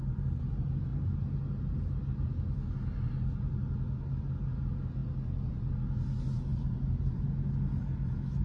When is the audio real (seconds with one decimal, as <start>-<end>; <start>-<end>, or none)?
0.0-5.0; 5.7-6.5; 7.2-8.4